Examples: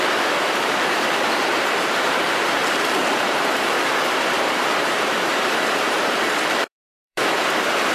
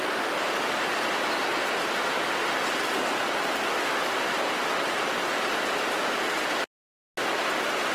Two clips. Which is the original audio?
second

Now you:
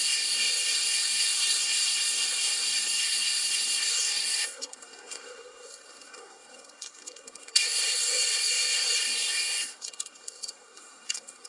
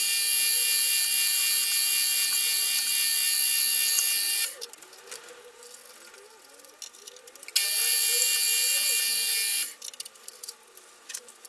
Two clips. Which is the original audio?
second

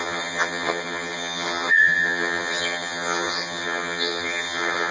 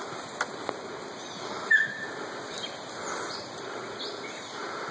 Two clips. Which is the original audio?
second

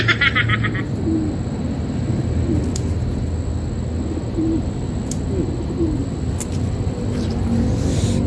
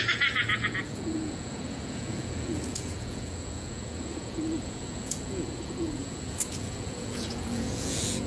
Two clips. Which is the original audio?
first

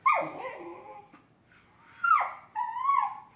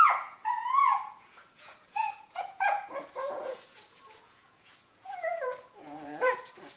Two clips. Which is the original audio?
first